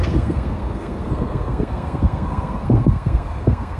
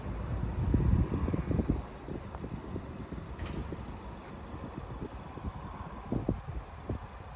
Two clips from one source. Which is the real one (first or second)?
second